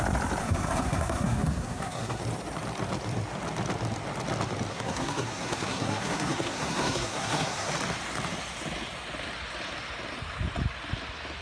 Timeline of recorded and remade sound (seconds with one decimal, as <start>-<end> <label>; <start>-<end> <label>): 0.0-0.4 recorded; 0.4-2.2 remade; 2.2-4.7 recorded; 4.7-7.7 remade; 7.7-11.4 recorded